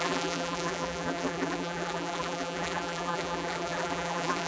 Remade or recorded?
remade